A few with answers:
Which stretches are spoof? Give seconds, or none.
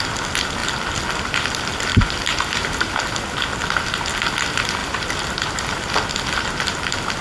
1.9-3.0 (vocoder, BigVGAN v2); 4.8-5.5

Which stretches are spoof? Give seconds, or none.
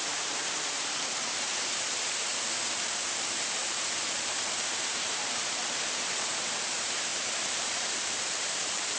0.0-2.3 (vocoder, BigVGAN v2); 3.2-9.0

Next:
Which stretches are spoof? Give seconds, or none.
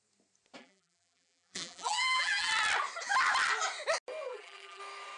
0.6-2.5 (vocoder, BigVGAN v2); 4.3-4.8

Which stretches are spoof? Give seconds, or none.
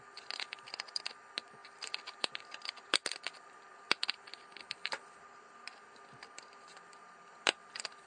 none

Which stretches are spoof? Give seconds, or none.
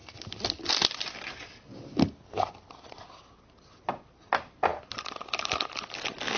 none